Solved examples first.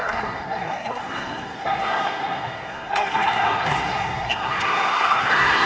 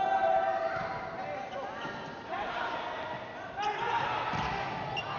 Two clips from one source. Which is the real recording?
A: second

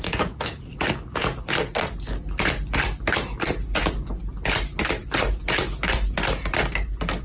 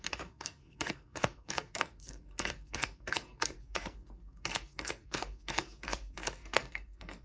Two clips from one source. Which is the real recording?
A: first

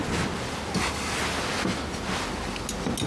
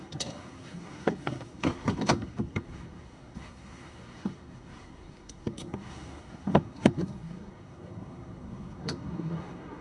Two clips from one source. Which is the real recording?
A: first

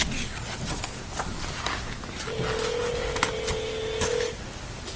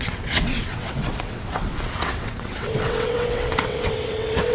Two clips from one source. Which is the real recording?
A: first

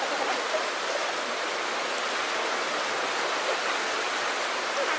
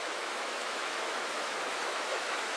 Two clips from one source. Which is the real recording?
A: first